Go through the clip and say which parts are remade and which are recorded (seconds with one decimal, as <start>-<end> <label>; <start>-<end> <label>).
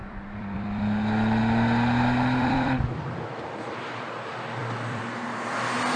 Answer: 0.0-0.8 remade; 0.8-1.4 recorded; 1.4-5.0 remade; 5.0-6.0 recorded